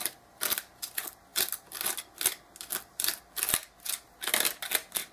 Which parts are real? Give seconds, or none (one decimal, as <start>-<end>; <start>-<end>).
1.3-4.3

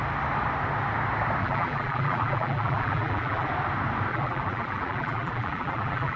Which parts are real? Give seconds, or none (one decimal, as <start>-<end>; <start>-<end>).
0.0-1.4; 3.5-4.1

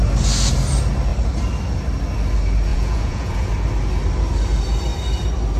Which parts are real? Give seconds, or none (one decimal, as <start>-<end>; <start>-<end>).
0.0-2.7; 3.5-5.6

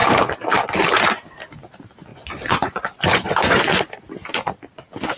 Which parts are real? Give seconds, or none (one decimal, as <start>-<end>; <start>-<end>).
0.0-2.1; 4.0-5.2

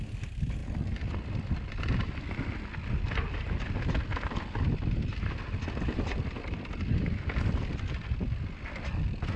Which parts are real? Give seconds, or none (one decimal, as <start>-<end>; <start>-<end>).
0.0-9.4

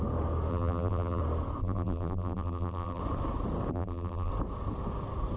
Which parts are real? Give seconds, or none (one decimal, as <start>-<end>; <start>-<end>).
0.0-0.5; 1.2-1.6; 3.0-3.7; 4.3-5.4